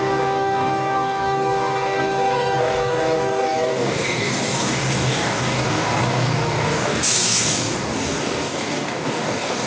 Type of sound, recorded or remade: remade